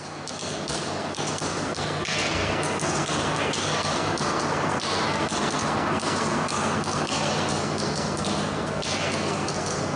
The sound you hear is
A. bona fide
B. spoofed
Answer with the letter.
B